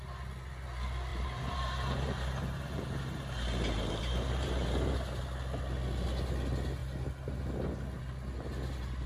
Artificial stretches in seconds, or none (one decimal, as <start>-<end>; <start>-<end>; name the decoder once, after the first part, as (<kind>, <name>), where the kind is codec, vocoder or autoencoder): 1.1-5.2 (vocoder, BigVGAN v2)